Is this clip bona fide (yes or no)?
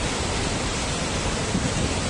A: yes